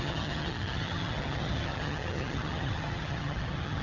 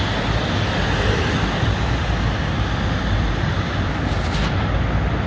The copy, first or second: first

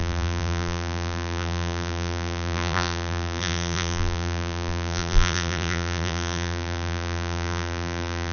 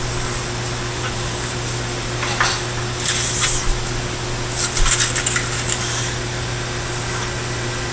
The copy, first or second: first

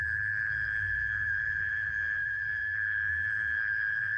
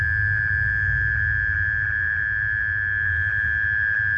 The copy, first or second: first